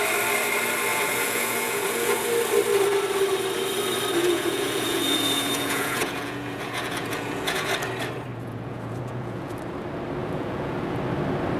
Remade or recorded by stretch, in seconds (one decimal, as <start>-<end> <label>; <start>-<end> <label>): 0.0-0.9 recorded; 0.9-2.3 remade; 2.3-4.2 recorded; 4.2-7.7 remade; 7.7-8.3 recorded; 8.3-9.6 remade; 9.6-10.2 recorded; 10.2-11.0 remade; 11.0-11.6 recorded